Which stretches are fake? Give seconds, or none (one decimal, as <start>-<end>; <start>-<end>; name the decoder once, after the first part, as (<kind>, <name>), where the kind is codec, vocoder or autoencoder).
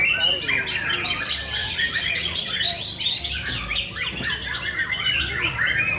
1.6-2.4 (vocoder, Vocos)